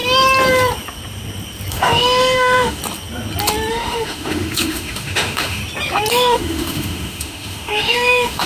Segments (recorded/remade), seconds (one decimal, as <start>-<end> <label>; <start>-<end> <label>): 0.0-1.7 recorded; 1.7-2.8 remade; 2.8-3.7 recorded; 3.7-5.6 remade; 5.6-6.1 recorded; 6.1-8.5 remade